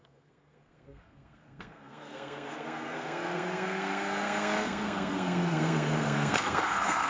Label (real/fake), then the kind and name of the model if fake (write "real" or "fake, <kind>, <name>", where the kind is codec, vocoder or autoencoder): fake, codec, SNAC